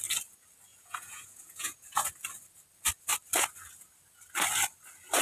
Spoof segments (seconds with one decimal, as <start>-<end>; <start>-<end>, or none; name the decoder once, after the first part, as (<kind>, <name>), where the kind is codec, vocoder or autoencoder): 0.7-2.1 (vocoder, Vocos)